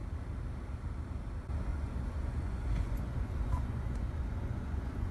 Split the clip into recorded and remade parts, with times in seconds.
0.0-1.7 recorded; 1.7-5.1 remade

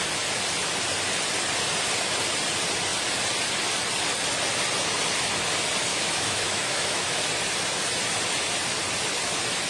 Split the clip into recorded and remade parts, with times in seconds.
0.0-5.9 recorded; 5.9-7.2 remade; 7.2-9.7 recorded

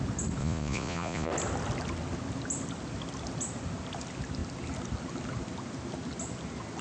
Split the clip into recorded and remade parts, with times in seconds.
0.0-0.4 recorded; 0.4-1.3 remade; 1.3-6.8 recorded